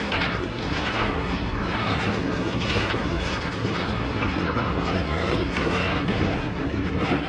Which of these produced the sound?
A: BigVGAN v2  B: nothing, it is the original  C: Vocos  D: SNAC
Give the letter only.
D